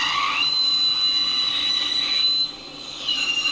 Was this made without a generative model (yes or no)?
yes